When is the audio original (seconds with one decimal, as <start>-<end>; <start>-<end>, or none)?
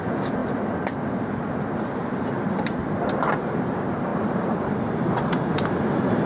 0.0-4.1; 5.1-6.3